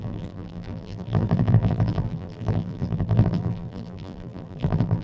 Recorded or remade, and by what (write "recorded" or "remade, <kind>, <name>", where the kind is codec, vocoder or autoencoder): remade, vocoder, BigVGAN v2